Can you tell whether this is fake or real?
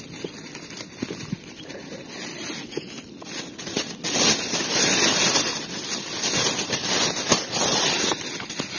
real